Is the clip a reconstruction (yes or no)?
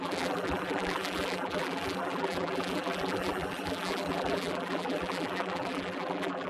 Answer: yes